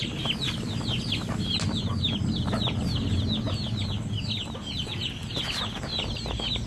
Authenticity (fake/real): real